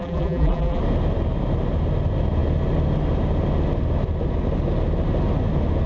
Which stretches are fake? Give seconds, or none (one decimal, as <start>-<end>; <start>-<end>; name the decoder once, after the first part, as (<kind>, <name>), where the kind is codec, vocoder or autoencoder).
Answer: 0.0-0.8 (vocoder, BigVGAN v2)